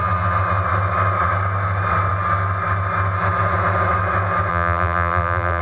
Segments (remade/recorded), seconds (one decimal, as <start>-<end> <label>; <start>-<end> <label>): 0.0-4.5 recorded; 4.5-5.6 remade